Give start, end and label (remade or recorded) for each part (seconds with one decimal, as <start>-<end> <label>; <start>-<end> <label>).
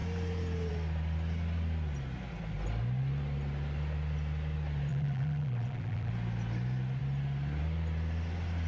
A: 0.0-4.9 recorded; 4.9-6.1 remade; 6.1-8.7 recorded